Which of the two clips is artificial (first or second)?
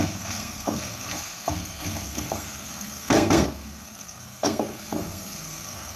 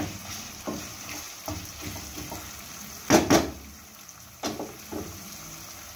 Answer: first